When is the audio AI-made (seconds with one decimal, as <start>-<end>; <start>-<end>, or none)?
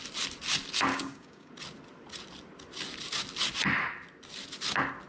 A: 0.9-1.5